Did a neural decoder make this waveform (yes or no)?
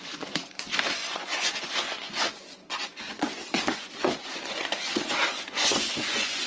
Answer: yes